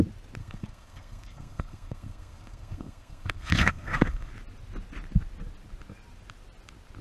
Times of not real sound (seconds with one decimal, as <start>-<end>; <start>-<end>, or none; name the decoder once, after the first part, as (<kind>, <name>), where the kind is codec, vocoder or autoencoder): 0.4-4.3 (codec, SNAC)